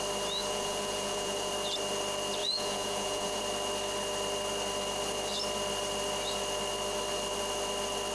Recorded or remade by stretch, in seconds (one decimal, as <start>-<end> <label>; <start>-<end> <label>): 0.0-0.4 recorded; 0.4-1.5 remade; 1.5-2.4 recorded; 2.4-3.4 remade; 3.4-8.1 recorded